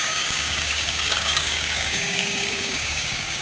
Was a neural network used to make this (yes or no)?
yes